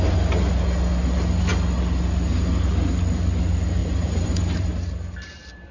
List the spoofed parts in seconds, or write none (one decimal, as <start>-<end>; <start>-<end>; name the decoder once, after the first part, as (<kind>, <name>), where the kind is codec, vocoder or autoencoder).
3.8-4.7 (vocoder, BigVGAN v2)